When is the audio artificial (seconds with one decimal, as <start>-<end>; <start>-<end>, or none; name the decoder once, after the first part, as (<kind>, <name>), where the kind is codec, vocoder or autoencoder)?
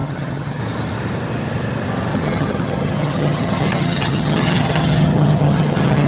0.0-0.6 (vocoder, HiFi-GAN); 2.1-6.1